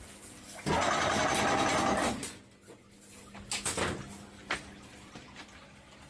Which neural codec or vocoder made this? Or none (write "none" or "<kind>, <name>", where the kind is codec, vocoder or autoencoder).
none